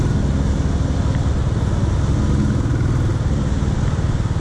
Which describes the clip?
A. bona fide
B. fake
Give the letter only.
A